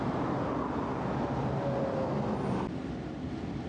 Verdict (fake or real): real